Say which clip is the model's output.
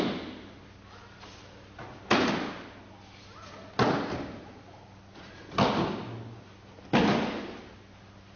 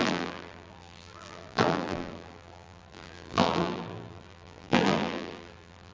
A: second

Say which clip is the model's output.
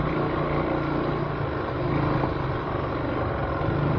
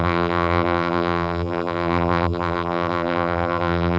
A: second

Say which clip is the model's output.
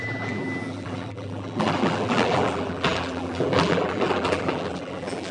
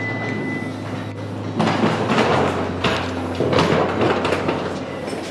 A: first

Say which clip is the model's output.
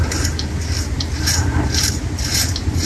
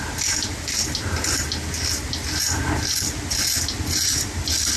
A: first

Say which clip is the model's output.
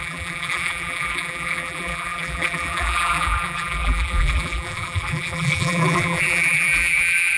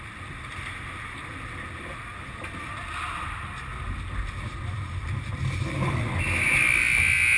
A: first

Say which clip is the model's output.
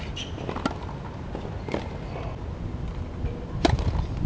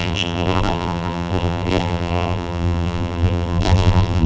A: second